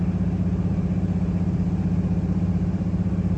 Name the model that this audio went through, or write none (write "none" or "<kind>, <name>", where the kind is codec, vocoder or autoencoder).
vocoder, BigVGAN v2